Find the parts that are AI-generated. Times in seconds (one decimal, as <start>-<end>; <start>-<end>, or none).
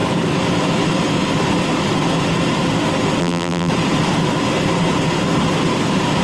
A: 3.2-3.7